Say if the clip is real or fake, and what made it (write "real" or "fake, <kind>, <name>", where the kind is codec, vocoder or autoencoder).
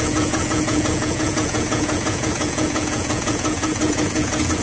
fake, vocoder, Vocos